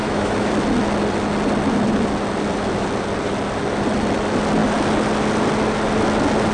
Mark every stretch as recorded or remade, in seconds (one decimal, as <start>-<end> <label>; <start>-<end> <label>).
0.0-0.5 remade; 0.5-6.5 recorded